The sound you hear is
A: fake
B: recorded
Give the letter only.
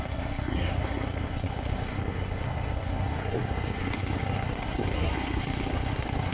A